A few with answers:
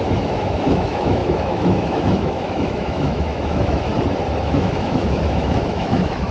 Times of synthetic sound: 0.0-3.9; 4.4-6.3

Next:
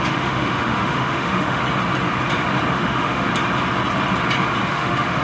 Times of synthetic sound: 0.0-1.6; 2.7-3.3; 4.7-5.2

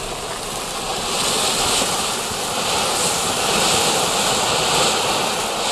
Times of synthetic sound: none

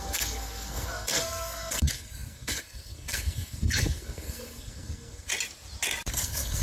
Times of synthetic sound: 0.0-5.3; 6.1-6.6

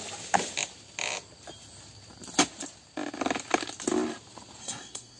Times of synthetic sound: 4.6-5.2

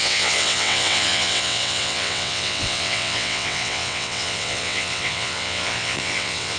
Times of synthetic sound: 0.0-6.6